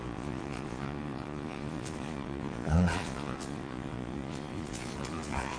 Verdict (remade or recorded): remade